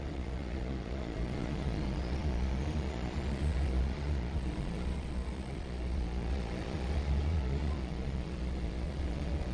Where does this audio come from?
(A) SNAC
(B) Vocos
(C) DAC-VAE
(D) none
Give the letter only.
B